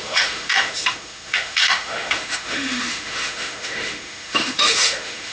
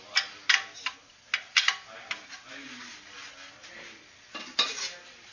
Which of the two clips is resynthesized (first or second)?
first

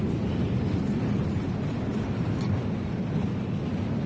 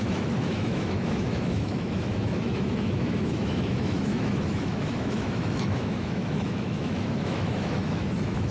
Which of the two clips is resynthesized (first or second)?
second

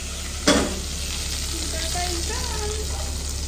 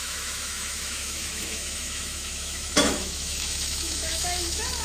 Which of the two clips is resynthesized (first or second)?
second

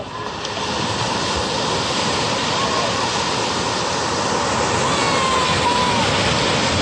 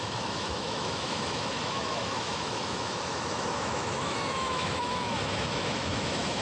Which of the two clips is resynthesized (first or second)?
second